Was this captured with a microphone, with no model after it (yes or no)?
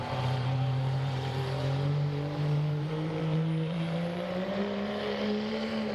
no